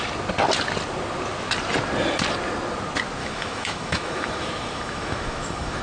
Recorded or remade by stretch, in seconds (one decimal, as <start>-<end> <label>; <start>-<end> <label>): 0.0-3.2 recorded; 3.2-5.8 remade